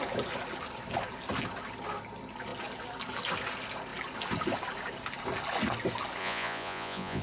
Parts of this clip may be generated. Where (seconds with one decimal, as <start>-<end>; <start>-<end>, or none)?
6.2-7.2